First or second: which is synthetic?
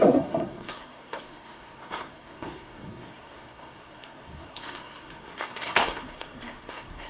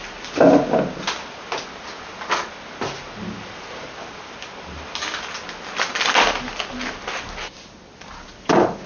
first